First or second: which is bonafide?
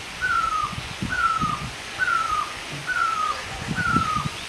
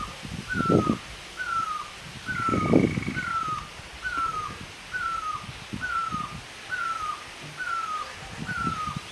second